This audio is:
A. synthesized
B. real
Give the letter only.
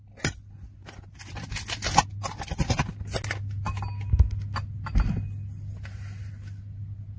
B